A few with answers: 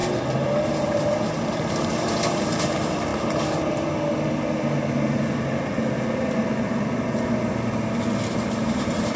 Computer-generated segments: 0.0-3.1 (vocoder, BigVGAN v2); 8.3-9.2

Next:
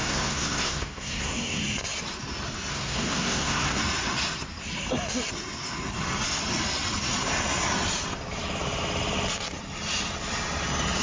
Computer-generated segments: 0.0-1.6 (codec, SNAC); 2.7-3.8

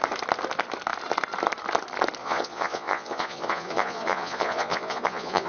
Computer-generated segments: 2.2-5.5 (vocoder, Vocos)

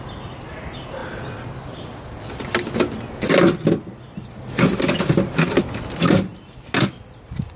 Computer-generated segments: none

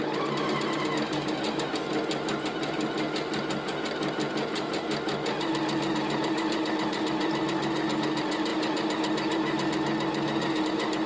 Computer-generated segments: none

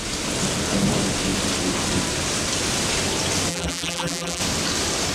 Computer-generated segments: 3.5-4.4 (vocoder, BigVGAN v2)